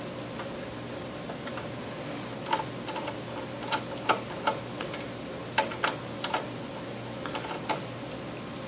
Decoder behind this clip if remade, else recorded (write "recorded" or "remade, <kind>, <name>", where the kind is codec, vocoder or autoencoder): recorded